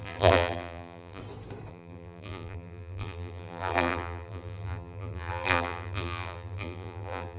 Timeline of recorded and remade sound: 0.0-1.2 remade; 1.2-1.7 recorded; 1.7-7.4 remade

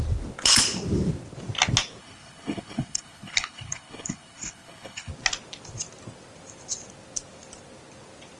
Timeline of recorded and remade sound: 0.0-2.0 recorded; 2.0-5.1 remade; 5.1-8.4 recorded

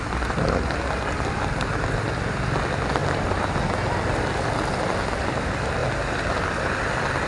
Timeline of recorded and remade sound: 0.0-3.0 recorded; 3.0-3.5 remade; 3.5-7.3 recorded

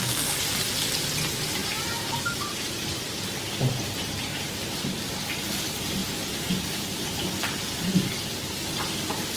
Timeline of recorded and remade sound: 0.0-1.6 recorded; 1.6-3.2 remade; 3.2-4.3 recorded; 4.3-4.8 remade; 4.8-9.4 recorded

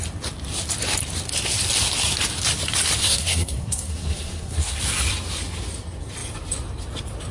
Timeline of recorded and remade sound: 0.0-3.0 recorded; 3.0-4.8 remade; 4.8-7.3 recorded